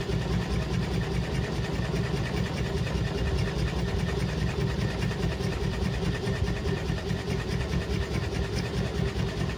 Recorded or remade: recorded